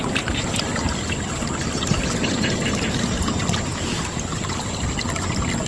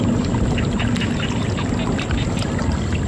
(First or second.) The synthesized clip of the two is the first